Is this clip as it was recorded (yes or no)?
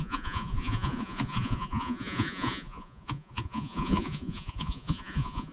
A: no